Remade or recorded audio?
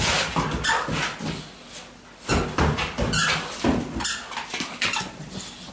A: recorded